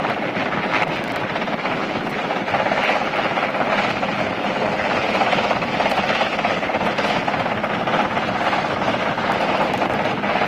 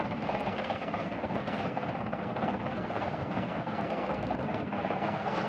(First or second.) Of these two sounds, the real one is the first